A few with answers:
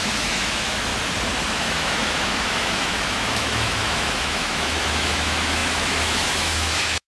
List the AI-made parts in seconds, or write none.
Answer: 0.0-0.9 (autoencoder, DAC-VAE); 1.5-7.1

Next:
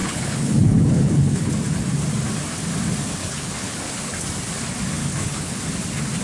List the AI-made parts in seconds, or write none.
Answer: 0.0-1.5 (codec, HILCodec); 3.2-3.9; 5.0-5.6

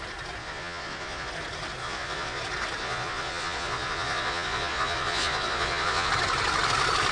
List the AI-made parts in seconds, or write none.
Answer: 0.4-1.3 (vocoder, Vocos); 1.8-2.4; 2.8-6.1

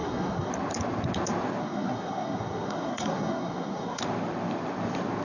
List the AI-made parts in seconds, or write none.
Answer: 0.0-0.5 (codec, SNAC); 1.6-4.0

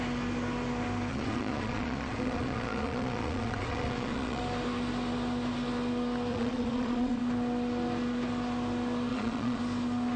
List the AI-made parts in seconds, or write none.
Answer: 1.1-4.4 (vocoder, Vocos); 6.3-7.2; 9.1-9.6

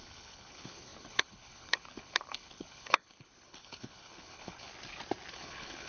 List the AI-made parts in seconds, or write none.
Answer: 0.0-4.7 (codec, HILCodec); 5.3-5.9

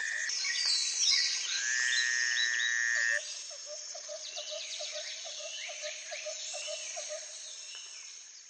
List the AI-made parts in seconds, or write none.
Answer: 0.0-1.6 (vocoder, Vocos); 3.9-8.5

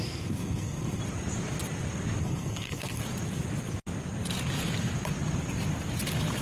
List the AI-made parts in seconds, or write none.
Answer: 0.0-1.0 (codec, SNAC); 2.2-3.0